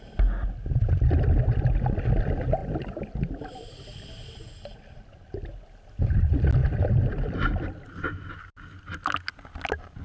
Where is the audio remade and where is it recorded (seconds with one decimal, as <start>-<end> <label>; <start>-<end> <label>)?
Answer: 0.0-10.0 recorded